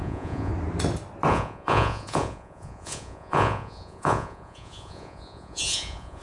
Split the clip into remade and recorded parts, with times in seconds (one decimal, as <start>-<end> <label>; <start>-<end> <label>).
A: 0.0-0.5 remade; 0.5-1.3 recorded; 1.3-6.2 remade